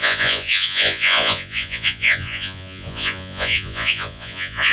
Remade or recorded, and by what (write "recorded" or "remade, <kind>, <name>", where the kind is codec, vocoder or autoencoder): remade, vocoder, Vocos